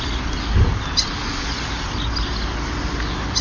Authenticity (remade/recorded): recorded